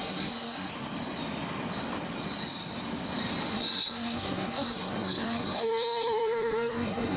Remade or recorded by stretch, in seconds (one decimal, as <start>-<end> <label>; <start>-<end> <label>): 0.0-0.7 remade; 0.7-3.5 recorded; 3.5-7.2 remade